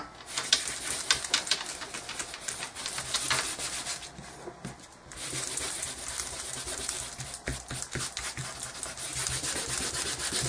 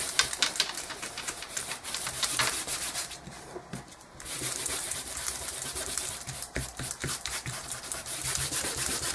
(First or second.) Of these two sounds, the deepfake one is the second